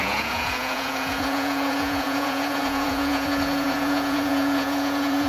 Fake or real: fake